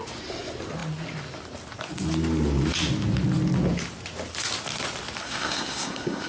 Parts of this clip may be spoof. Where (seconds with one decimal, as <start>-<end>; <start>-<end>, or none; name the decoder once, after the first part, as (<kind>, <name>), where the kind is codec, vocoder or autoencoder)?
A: 5.2-6.3 (codec, SNAC)